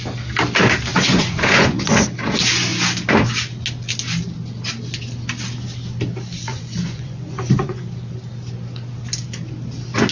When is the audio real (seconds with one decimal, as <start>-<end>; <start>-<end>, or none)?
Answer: 0.0-0.9; 2.0-6.5; 7.8-10.1